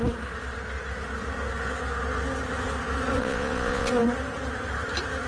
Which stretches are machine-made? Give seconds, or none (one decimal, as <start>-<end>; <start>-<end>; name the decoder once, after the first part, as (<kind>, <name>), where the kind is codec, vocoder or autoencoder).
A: 3.2-3.9 (vocoder, Vocos)